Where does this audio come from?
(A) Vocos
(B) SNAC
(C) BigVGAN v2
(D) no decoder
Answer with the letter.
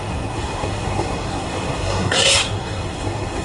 B